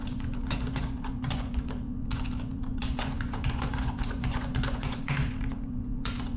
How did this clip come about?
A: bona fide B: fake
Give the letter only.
B